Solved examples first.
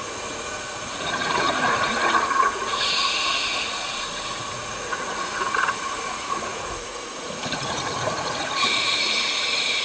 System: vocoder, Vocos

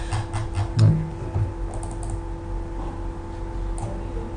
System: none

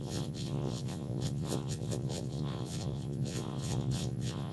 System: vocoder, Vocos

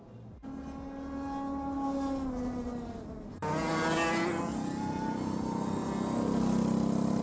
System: none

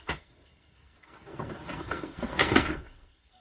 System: codec, SNAC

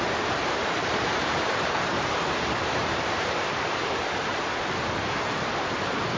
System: vocoder, BigVGAN v2